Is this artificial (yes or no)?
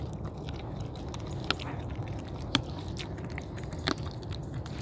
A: no